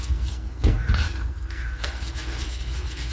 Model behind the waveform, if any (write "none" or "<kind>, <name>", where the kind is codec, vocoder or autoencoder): codec, SNAC